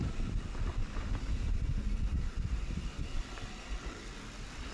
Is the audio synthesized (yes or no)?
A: no